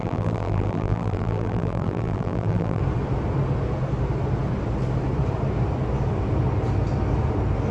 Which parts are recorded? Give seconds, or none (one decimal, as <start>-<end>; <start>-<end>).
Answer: 2.8-7.7